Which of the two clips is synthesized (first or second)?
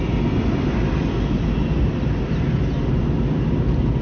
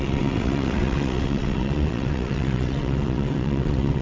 second